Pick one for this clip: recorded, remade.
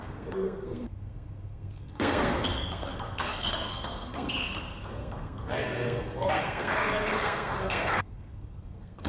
remade